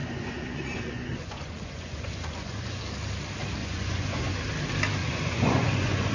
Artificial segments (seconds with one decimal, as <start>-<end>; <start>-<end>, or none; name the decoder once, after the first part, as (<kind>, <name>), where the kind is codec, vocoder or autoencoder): 0.0-2.8 (vocoder, Vocos); 3.6-4.4; 5.0-6.1